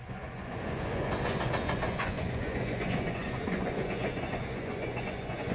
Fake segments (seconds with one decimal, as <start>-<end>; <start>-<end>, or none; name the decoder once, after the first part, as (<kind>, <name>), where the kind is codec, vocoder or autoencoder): 0.0-5.5 (vocoder, Vocos)